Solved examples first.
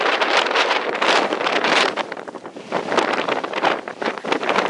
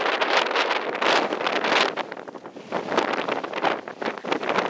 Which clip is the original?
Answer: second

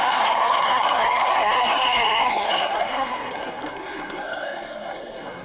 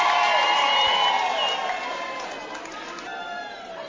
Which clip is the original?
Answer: second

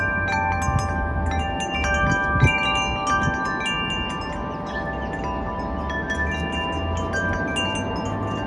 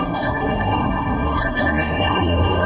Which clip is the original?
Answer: first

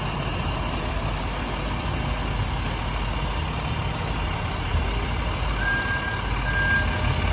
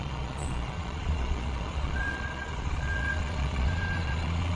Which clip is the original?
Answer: first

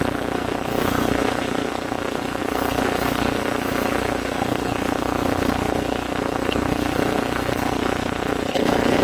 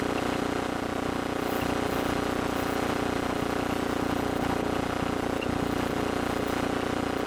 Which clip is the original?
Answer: second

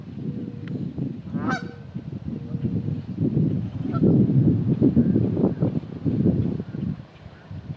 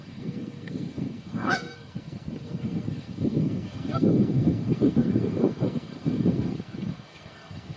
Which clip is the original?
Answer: first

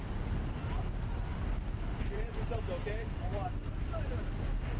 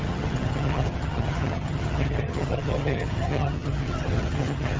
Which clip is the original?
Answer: first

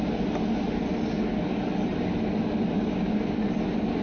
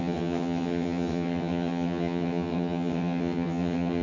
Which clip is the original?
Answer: first